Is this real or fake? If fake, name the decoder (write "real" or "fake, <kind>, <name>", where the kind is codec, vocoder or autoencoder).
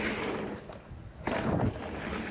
real